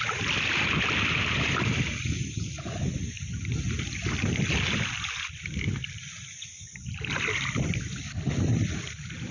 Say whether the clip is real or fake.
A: real